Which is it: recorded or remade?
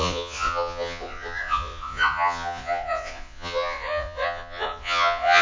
remade